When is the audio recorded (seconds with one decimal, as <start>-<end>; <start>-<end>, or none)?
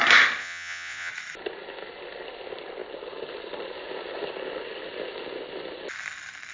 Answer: 0.0-0.4; 1.1-6.5